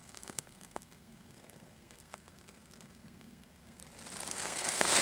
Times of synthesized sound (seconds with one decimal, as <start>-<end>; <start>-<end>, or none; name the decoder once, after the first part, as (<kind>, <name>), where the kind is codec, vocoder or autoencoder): 0.0-3.8 (codec, SNAC); 4.3-5.0